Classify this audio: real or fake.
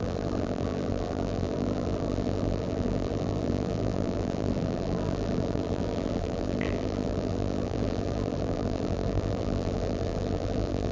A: fake